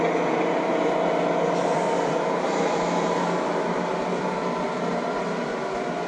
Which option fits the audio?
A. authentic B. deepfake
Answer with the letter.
A